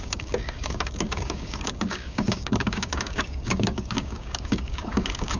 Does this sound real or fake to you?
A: fake